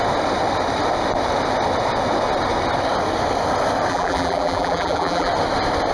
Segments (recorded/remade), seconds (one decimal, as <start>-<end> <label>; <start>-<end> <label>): 0.0-3.9 recorded; 3.9-5.3 remade; 5.3-5.9 recorded